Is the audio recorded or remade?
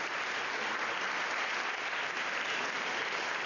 recorded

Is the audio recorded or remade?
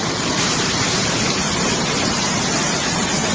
recorded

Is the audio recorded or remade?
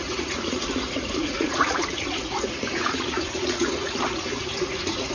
remade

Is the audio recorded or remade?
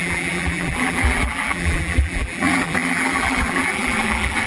remade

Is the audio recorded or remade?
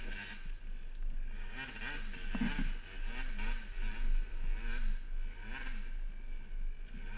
recorded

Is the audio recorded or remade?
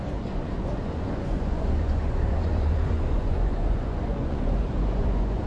remade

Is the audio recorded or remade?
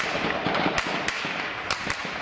recorded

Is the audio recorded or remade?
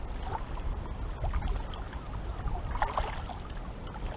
recorded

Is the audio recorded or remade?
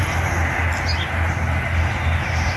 recorded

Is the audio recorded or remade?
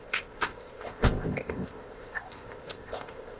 remade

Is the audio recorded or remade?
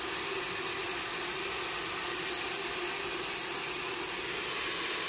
recorded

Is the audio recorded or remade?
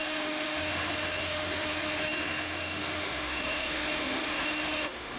remade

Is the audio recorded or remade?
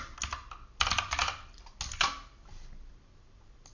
recorded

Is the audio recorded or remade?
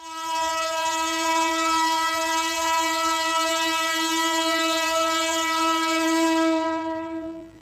remade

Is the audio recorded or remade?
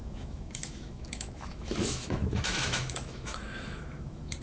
remade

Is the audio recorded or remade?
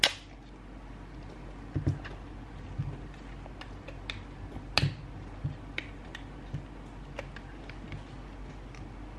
recorded